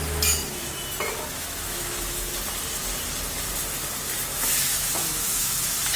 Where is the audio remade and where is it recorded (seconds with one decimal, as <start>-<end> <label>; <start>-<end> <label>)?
0.0-1.3 recorded; 1.3-2.3 remade; 2.3-4.3 recorded; 4.3-6.0 remade